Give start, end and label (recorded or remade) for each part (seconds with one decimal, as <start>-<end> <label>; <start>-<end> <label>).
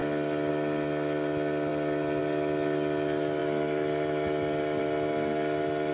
0.0-5.9 recorded